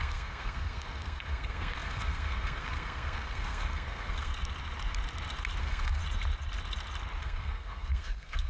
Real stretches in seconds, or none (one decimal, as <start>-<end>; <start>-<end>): 4.3-5.6; 6.0-7.2